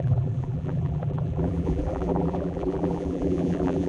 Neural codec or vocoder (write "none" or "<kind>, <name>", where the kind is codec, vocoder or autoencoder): vocoder, BigVGAN v2